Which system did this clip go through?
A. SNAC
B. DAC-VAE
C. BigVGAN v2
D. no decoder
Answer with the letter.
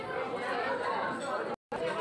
D